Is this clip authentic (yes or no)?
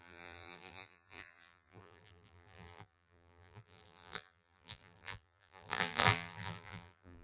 no